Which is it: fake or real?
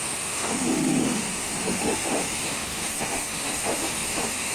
fake